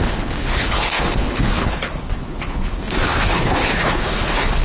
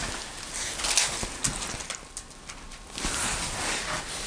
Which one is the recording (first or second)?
second